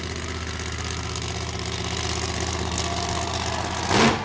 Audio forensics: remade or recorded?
recorded